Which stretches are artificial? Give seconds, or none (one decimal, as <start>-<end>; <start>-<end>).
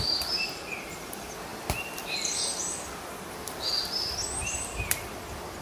0.0-5.6